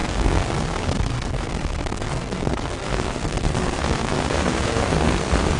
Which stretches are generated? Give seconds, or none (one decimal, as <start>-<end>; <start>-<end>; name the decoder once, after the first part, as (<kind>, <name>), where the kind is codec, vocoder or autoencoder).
0.0-5.6 (codec, SNAC)